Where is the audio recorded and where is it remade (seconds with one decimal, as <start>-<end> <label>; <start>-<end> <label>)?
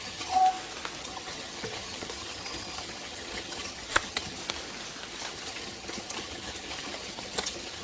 0.0-0.4 remade; 0.4-1.0 recorded; 1.0-4.4 remade; 4.4-5.3 recorded; 5.3-7.8 remade